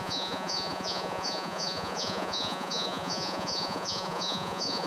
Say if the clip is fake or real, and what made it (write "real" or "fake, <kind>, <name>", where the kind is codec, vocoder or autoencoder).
fake, vocoder, Vocos